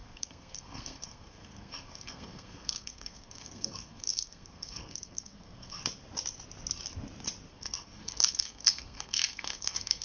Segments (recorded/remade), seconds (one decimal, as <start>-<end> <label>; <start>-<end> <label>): 0.0-5.8 remade; 5.8-7.5 recorded; 7.5-10.0 remade